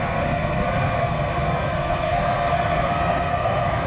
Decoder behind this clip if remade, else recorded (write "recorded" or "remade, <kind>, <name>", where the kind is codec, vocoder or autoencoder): remade, codec, SNAC